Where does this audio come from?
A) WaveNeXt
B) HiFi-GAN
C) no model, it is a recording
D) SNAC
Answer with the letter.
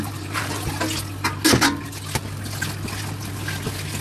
C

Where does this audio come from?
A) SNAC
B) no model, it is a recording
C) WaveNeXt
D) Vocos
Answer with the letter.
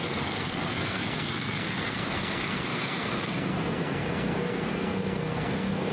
A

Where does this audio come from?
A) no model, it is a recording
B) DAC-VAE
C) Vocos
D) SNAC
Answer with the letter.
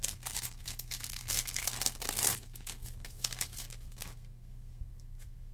D